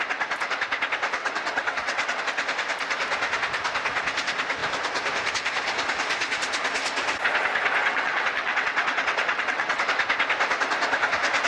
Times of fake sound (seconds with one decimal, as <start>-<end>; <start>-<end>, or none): 1.2-2.2; 7.8-9.8